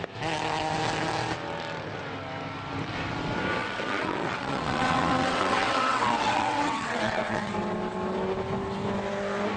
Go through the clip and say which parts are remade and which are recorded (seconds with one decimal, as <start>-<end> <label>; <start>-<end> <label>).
0.0-3.6 recorded; 3.6-7.5 remade; 7.5-9.6 recorded